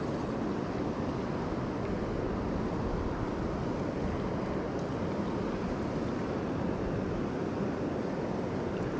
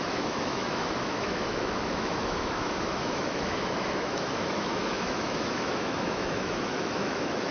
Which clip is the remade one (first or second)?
second